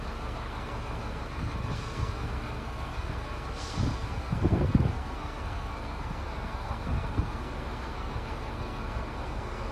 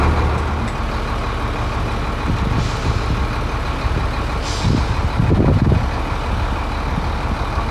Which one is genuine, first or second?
second